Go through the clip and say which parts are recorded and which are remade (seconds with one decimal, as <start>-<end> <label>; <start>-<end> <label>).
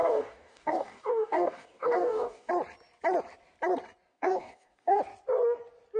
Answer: 0.0-2.5 remade; 2.5-4.1 recorded; 4.1-5.0 remade; 5.0-6.0 recorded